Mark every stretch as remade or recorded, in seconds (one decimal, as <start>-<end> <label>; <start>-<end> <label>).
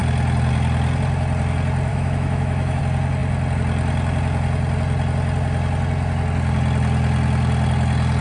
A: 0.0-1.9 recorded; 1.9-2.8 remade; 2.8-8.2 recorded